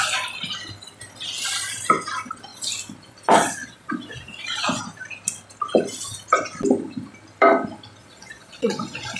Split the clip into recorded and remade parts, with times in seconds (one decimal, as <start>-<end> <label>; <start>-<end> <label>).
0.0-3.6 recorded; 3.6-4.8 remade; 4.8-8.0 recorded; 8.0-9.2 remade